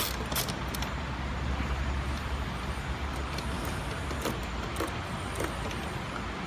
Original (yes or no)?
yes